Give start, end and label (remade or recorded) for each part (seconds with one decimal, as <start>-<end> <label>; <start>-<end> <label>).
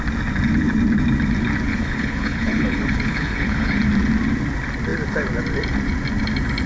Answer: 0.0-1.7 recorded; 1.7-3.8 remade; 3.8-6.7 recorded